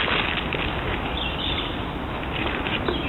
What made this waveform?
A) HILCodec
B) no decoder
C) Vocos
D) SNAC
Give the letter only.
B